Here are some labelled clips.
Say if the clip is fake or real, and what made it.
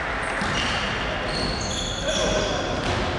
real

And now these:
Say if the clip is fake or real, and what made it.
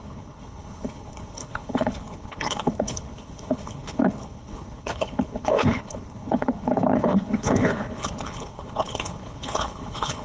fake, codec, HILCodec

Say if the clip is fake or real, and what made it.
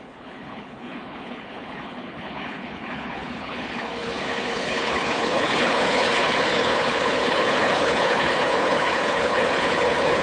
fake, codec, HILCodec